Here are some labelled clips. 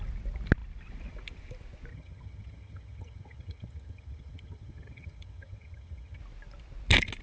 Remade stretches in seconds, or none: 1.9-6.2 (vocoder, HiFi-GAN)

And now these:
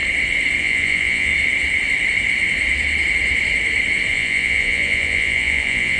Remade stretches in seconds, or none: 0.6-1.3 (vocoder, Vocos); 4.1-6.0

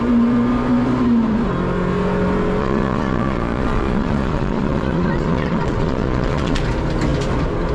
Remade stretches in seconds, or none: 2.6-6.6 (vocoder, Vocos)

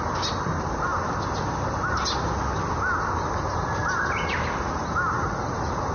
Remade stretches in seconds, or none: none